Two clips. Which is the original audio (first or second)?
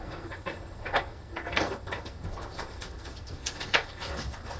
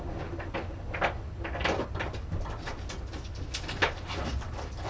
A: second